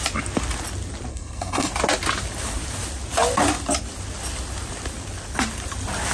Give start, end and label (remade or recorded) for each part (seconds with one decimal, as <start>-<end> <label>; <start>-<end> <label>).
0.0-1.1 recorded; 1.1-1.7 remade; 1.7-6.1 recorded